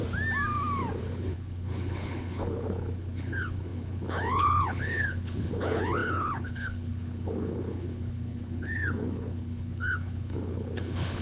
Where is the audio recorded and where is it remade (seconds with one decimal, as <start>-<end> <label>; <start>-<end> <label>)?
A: 0.0-1.0 recorded; 1.0-11.2 remade